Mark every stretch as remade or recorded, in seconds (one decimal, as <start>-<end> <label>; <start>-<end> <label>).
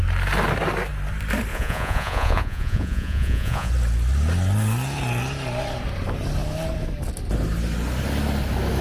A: 0.0-1.5 recorded; 1.5-3.7 remade; 3.7-8.8 recorded